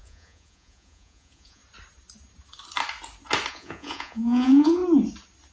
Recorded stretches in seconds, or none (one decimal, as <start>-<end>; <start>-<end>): 1.6-3.5; 4.8-5.5